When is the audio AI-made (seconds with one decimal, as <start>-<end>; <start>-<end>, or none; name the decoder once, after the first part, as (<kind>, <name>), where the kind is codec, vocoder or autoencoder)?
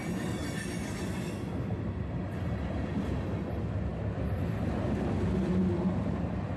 none